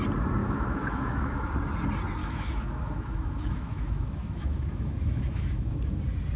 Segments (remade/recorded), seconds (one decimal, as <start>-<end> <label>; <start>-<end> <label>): 0.0-0.4 recorded; 0.4-1.5 remade; 1.5-2.2 recorded; 2.2-6.0 remade; 6.0-6.4 recorded